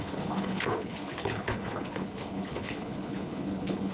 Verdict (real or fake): fake